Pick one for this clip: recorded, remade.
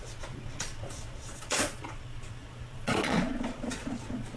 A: remade